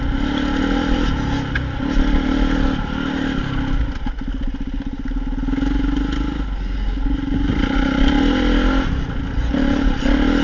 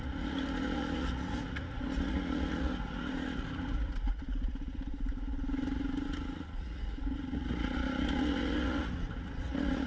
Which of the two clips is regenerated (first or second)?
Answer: second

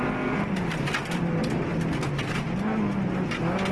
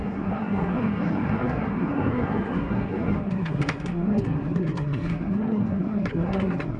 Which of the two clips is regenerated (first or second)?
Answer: second